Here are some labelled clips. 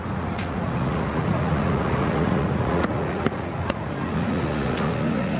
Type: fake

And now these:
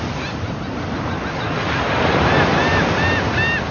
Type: real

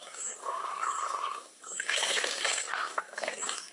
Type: fake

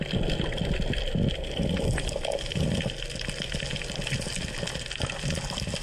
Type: real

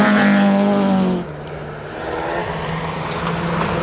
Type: real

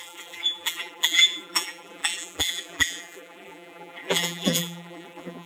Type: fake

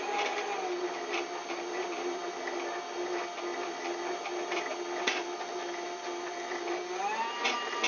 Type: real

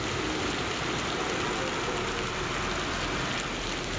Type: real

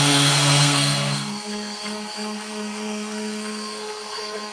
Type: fake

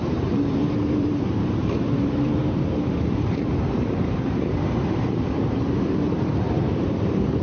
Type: fake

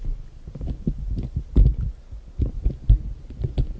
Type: real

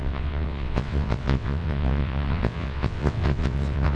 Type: fake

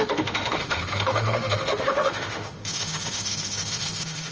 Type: fake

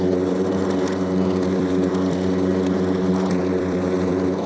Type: fake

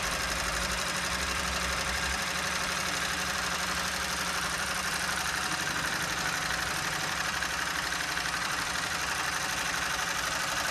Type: fake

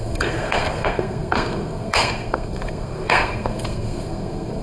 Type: fake